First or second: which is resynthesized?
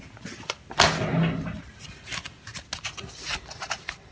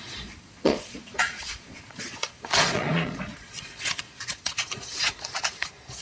second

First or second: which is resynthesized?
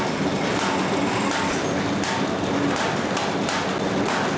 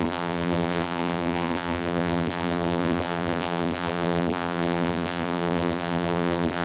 second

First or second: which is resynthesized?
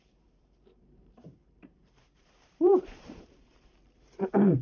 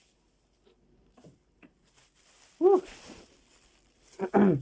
first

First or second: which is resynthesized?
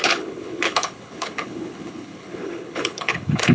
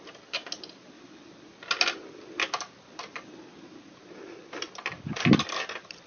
first